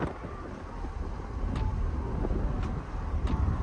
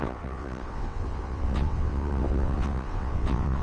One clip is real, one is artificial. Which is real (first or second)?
first